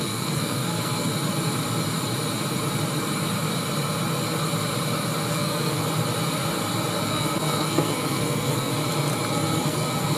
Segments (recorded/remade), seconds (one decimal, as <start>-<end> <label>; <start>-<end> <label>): 0.0-1.1 remade; 1.1-5.3 recorded; 5.3-5.8 remade; 5.8-7.0 recorded; 7.0-8.7 remade; 8.7-9.3 recorded; 9.3-10.2 remade